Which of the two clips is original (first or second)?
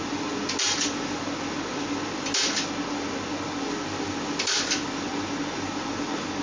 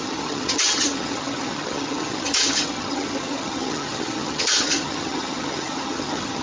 first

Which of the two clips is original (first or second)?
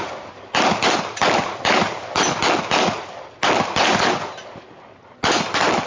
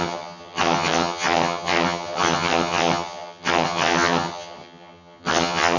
first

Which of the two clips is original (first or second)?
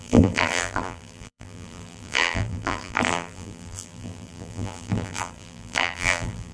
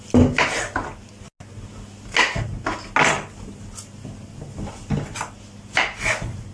second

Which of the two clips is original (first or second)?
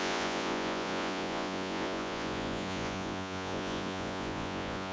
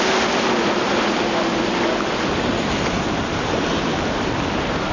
second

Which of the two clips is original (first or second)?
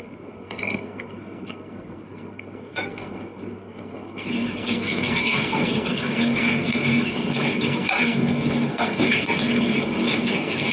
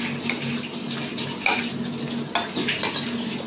second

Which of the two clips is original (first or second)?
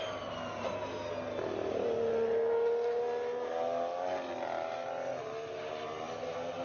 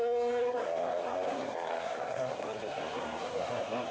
first